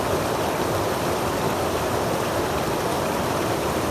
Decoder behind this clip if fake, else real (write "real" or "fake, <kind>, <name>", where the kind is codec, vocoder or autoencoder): real